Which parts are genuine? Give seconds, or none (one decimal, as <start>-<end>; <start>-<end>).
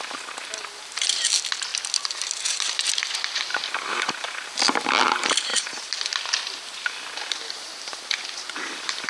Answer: 0.0-1.7; 3.1-3.5; 4.1-5.5; 8.2-9.1